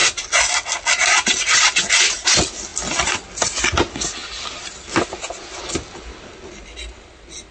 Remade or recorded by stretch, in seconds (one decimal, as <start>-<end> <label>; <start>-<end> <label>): 0.0-7.5 recorded